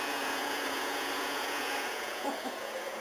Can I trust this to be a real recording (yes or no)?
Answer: no